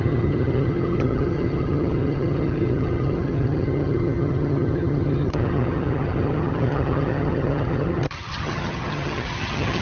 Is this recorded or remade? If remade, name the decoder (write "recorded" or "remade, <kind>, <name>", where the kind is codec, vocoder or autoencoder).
remade, vocoder, HiFi-GAN